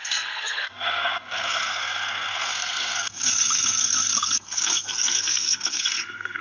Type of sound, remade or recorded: remade